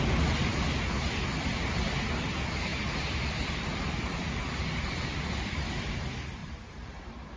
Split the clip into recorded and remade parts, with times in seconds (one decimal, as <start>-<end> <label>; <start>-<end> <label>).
0.0-2.7 recorded; 2.7-5.5 remade; 5.5-6.4 recorded; 6.4-7.0 remade; 7.0-7.4 recorded